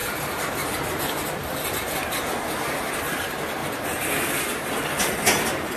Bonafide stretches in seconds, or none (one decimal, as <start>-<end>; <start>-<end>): 0.0-5.8